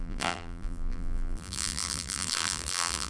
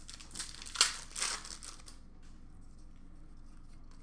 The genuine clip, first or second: second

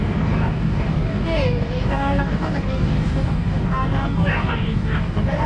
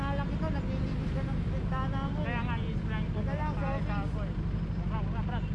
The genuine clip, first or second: second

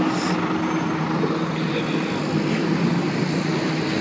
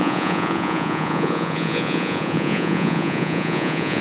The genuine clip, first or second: first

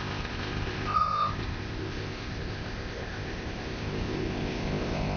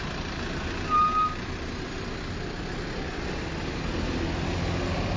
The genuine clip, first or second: second